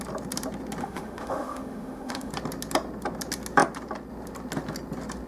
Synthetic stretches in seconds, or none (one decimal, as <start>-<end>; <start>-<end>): 0.8-2.3